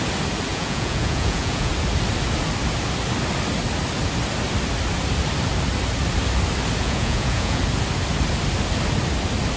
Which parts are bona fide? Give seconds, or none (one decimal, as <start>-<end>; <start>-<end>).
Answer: 0.0-0.5; 1.7-6.8; 7.6-9.6